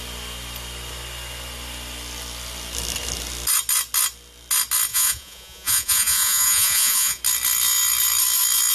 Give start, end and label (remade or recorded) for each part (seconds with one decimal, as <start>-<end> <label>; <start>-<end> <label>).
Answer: 0.0-4.9 recorded; 4.9-7.2 remade; 7.2-8.7 recorded